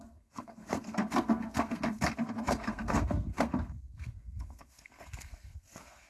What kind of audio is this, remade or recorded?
remade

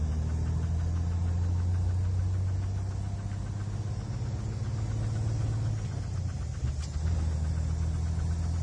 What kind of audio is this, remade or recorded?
recorded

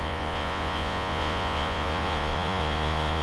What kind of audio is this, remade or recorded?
remade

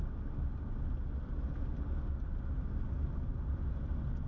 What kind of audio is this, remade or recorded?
recorded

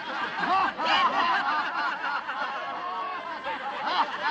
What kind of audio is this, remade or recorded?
recorded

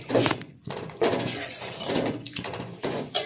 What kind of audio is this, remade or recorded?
remade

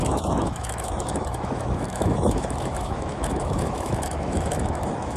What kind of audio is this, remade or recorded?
remade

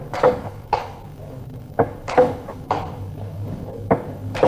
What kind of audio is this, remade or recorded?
remade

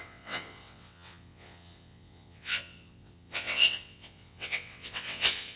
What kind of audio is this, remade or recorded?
remade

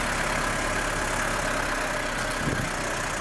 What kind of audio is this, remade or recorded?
recorded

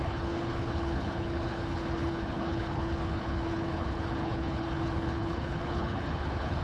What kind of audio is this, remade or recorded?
remade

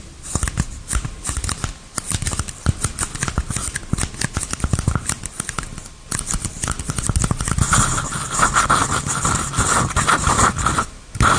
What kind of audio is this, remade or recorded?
recorded